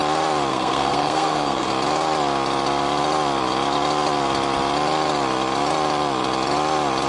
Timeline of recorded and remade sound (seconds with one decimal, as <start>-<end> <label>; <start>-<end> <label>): 0.0-0.5 recorded; 0.5-1.7 remade; 1.7-7.1 recorded